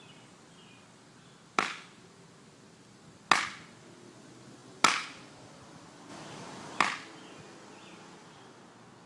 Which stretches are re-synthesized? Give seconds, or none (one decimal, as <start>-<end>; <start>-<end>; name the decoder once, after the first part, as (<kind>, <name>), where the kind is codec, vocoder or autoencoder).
4.6-5.5 (vocoder, BigVGAN v2); 6.1-6.8